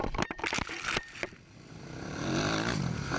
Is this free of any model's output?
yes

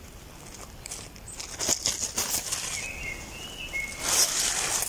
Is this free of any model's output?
yes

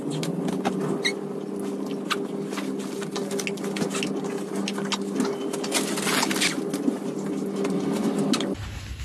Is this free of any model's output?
yes